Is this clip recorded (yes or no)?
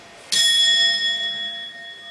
yes